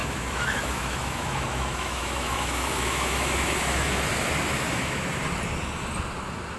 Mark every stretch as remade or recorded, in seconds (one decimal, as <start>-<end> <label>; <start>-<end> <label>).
0.0-4.0 remade; 4.0-4.5 recorded; 4.5-5.0 remade; 5.0-6.6 recorded